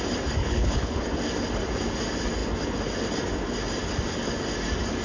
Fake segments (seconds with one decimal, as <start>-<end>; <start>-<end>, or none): 0.4-1.0